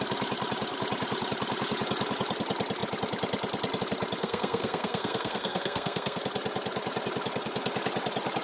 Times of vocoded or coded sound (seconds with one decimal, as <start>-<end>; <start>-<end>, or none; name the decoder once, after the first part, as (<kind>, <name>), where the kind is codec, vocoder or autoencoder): 4.2-6.2 (codec, SNAC)